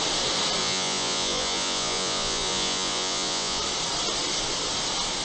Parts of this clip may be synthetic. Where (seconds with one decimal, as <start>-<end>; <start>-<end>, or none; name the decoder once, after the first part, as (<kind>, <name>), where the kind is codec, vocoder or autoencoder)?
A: 0.6-3.6 (vocoder, Vocos)